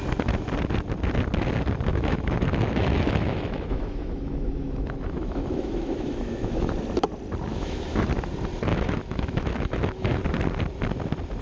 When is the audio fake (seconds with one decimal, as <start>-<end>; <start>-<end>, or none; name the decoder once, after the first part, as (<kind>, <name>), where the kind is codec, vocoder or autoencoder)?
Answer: 1.9-6.7 (autoencoder, DAC-VAE); 7.5-8.1; 8.7-10.2